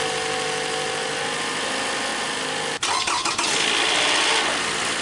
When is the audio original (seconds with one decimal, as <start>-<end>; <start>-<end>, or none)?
0.0-5.0